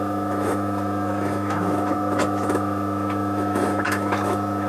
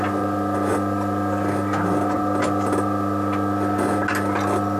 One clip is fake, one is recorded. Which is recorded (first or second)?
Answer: second